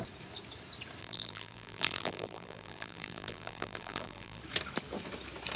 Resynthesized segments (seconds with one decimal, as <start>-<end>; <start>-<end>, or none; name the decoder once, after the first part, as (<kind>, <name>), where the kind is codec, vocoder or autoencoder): 1.0-4.4 (vocoder, BigVGAN v2)